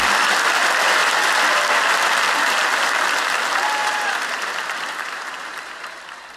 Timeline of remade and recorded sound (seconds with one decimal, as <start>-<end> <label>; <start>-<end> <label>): 0.0-3.8 recorded; 3.8-6.0 remade; 6.0-6.4 recorded